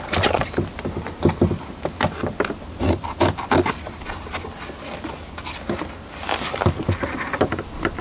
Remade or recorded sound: recorded